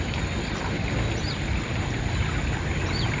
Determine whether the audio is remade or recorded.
recorded